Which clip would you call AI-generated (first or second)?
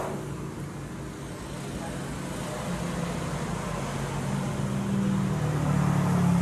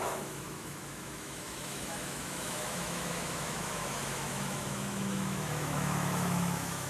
second